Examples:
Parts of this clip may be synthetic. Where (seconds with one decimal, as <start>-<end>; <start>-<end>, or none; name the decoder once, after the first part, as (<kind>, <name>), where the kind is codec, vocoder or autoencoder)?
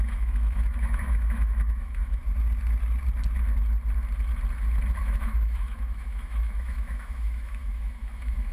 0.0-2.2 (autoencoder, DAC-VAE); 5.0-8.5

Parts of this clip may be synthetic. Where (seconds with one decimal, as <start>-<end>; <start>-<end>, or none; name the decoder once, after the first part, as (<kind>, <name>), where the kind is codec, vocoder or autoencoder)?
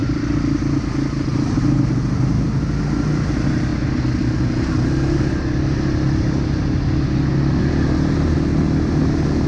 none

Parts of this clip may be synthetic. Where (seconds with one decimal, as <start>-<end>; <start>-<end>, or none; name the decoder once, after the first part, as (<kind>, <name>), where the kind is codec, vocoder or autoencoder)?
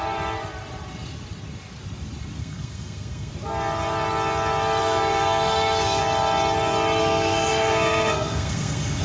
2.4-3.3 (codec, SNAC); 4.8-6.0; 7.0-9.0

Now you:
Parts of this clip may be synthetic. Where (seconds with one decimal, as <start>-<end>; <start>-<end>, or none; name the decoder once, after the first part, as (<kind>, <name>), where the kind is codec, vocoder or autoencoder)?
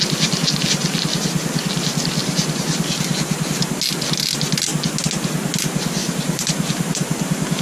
2.2-3.5 (vocoder, BigVGAN v2); 6.0-7.6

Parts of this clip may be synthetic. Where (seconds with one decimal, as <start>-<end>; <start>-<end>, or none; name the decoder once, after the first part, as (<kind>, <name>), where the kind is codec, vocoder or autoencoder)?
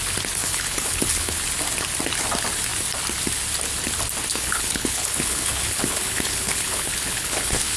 0.4-1.4 (codec, HILCodec); 4.3-7.8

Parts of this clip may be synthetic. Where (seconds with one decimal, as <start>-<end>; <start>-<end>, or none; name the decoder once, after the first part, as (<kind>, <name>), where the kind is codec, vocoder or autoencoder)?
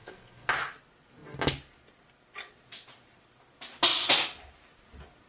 0.0-0.5 (codec, SNAC)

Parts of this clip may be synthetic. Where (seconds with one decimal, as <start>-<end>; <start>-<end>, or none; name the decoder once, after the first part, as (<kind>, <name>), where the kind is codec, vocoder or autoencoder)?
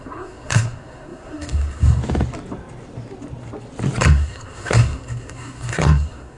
0.0-2.0 (codec, SNAC); 4.0-6.4